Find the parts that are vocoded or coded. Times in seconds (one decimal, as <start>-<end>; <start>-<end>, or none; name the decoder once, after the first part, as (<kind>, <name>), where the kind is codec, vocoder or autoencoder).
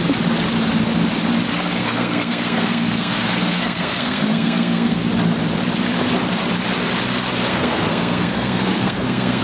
1.8-5.0 (codec, SNAC); 7.5-9.4